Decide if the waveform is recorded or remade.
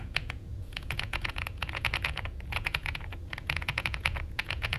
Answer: remade